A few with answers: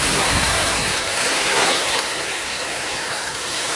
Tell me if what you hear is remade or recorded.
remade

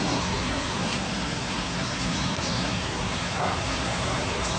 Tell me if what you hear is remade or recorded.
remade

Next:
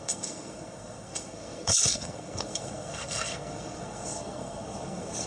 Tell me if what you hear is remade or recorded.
remade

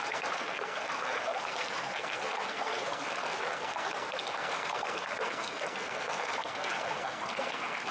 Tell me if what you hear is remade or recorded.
remade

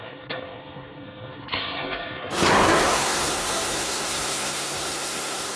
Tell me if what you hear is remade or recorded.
remade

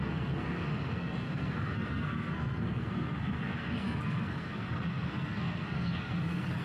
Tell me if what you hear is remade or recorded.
remade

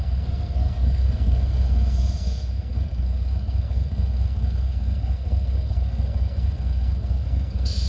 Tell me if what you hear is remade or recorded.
remade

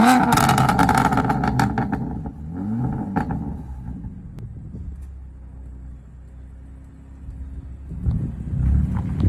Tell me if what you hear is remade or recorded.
recorded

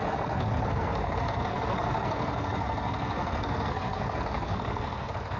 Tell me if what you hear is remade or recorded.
remade